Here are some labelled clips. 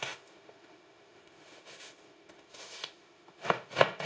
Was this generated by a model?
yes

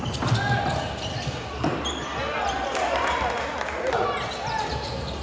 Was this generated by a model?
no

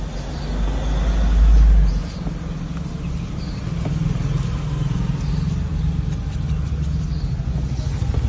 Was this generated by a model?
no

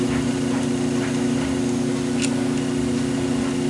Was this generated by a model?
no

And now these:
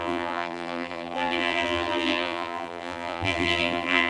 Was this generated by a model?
yes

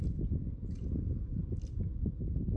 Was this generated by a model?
no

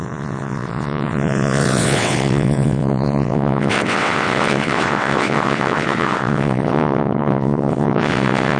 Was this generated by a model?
yes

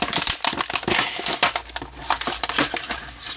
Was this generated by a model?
no